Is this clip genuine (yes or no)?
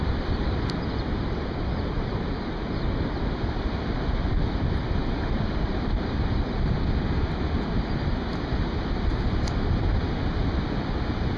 yes